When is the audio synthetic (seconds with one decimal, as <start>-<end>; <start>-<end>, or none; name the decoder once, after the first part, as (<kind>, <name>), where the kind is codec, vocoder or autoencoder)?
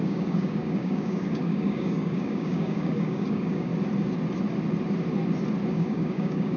0.0-3.7 (codec, DAC); 5.7-6.6